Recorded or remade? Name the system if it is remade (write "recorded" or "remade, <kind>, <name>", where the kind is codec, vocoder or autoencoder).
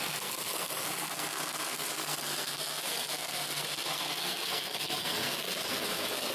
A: remade, codec, SNAC